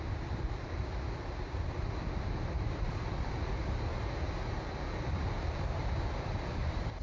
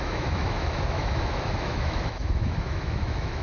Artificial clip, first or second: second